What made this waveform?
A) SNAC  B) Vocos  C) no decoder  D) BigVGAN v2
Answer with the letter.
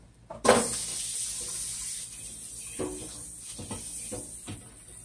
C